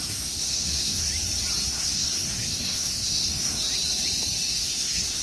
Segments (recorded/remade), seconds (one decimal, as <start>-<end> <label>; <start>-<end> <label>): 0.0-1.1 remade; 1.1-1.7 recorded; 1.7-3.6 remade; 3.6-4.5 recorded; 4.5-5.2 remade